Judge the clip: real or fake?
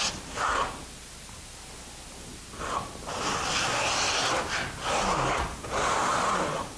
real